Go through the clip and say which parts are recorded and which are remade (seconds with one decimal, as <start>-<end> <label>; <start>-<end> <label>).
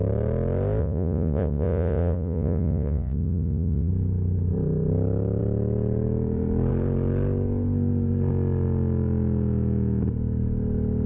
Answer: 0.0-0.8 recorded; 0.8-3.9 remade; 3.9-11.1 recorded